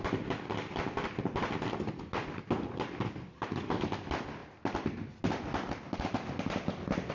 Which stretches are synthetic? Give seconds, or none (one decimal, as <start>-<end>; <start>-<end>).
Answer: none